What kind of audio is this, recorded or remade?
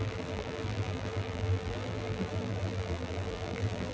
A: remade